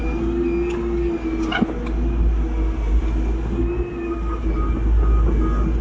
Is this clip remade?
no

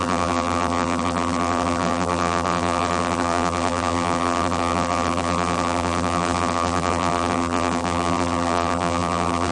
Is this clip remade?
yes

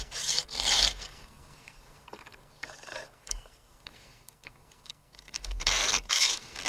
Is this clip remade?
yes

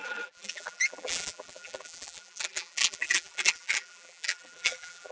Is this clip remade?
yes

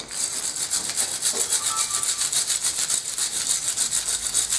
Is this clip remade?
no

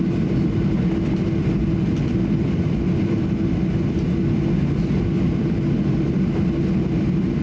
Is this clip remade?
no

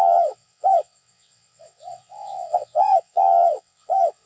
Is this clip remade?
yes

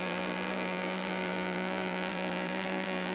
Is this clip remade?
yes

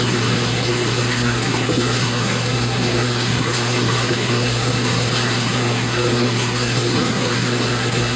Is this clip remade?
yes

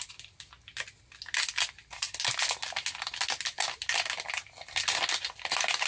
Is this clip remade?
no